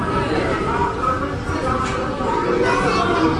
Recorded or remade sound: recorded